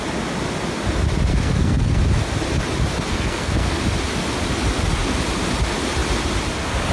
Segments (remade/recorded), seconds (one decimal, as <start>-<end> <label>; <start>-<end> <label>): 0.0-1.3 recorded; 1.3-2.0 remade; 2.0-3.1 recorded; 3.1-3.8 remade; 3.8-6.9 recorded